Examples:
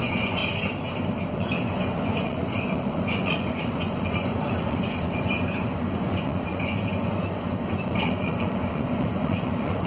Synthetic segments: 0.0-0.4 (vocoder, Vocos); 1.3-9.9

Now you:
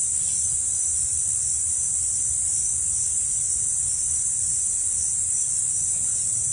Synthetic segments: 0.7-6.5 (vocoder, BigVGAN v2)

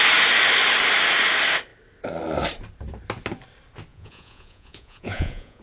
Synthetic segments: 3.9-5.6 (vocoder, Vocos)

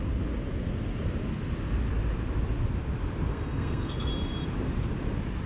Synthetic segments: 3.3-4.1 (codec, SNAC)

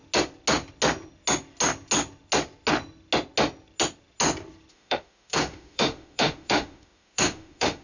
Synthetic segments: 4.7-7.8 (autoencoder, DAC-VAE)

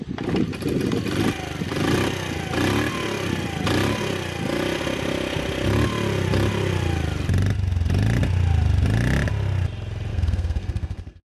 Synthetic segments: 10.1-11.3 (codec, SNAC)

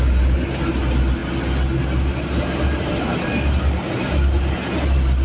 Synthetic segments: none